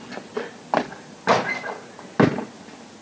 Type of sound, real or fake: real